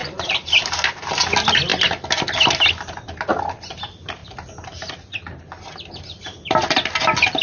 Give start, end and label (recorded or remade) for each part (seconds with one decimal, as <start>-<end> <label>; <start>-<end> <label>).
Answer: 0.0-0.7 remade; 0.7-7.4 recorded

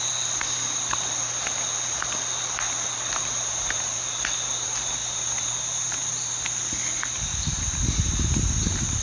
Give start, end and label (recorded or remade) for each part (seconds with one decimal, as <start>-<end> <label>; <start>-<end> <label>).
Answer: 0.0-9.0 recorded